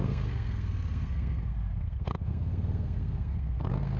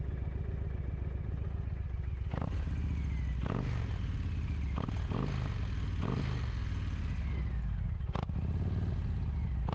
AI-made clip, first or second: first